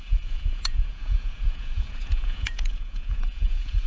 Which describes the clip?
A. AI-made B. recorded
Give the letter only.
A